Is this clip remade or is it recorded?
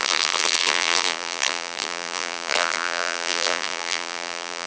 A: remade